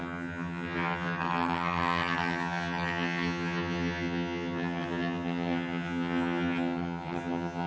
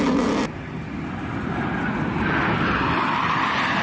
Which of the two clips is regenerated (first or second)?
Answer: first